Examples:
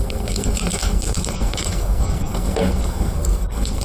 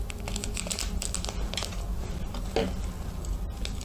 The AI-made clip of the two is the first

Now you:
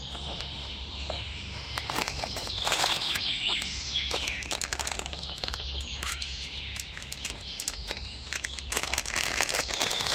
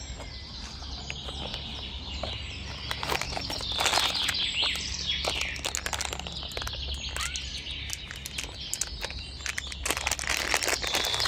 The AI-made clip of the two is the first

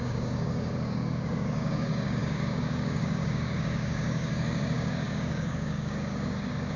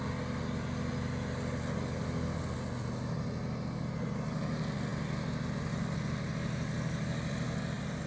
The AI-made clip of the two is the first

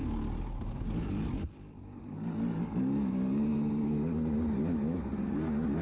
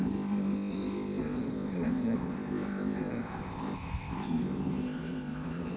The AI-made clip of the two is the second